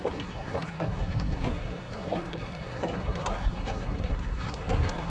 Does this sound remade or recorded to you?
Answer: remade